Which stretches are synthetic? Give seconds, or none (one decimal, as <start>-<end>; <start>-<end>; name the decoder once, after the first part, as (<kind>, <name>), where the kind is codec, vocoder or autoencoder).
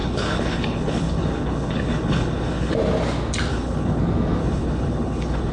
0.0-2.7 (codec, HILCodec); 3.5-4.0; 4.4-5.5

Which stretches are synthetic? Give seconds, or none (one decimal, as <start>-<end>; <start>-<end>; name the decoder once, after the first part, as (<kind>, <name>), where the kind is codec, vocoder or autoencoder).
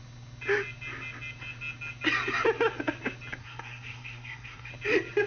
3.4-4.7 (codec, SNAC)